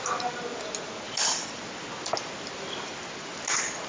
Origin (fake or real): real